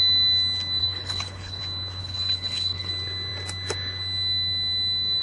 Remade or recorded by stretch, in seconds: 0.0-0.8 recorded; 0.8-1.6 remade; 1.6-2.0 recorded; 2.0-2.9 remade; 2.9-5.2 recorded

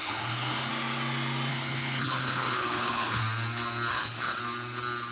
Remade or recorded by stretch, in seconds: 0.0-0.7 remade; 0.7-1.5 recorded; 1.5-3.2 remade; 3.2-3.9 recorded; 3.9-4.4 remade; 4.4-5.1 recorded